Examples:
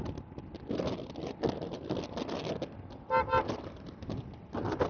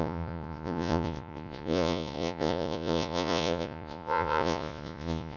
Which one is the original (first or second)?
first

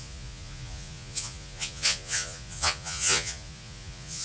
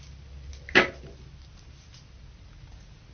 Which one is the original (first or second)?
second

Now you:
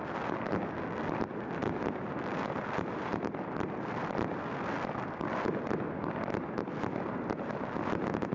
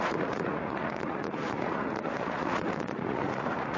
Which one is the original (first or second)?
first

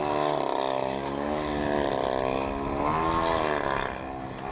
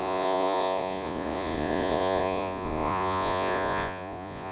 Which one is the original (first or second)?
first